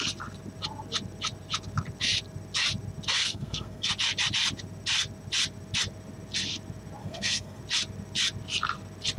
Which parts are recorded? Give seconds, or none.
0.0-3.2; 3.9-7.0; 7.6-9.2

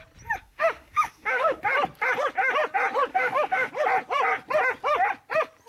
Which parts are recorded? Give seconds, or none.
0.0-0.4; 1.6-3.1; 3.7-5.7